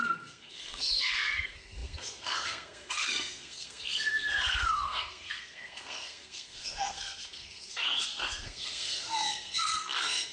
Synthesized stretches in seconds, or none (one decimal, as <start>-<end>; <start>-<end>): 0.0-10.3